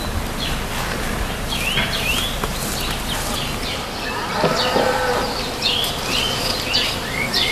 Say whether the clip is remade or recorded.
recorded